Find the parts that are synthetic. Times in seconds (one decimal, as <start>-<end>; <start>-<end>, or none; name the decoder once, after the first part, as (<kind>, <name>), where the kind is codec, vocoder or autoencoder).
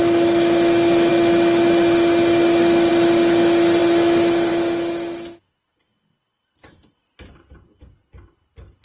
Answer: none